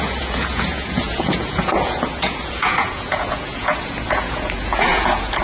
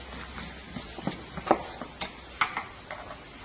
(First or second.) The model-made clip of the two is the first